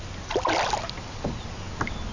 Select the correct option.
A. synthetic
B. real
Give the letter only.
B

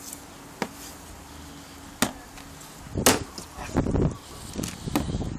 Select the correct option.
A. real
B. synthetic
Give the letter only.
A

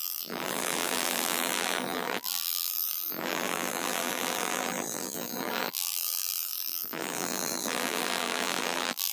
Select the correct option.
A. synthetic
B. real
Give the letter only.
A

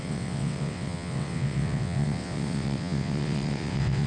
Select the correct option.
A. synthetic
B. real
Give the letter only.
A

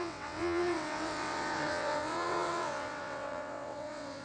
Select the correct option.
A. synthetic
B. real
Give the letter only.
A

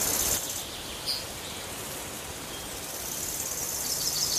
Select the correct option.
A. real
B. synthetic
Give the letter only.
A